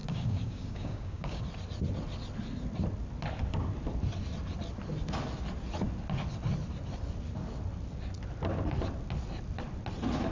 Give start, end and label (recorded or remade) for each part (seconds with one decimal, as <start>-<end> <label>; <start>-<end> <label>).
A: 0.0-1.4 remade; 1.4-10.3 recorded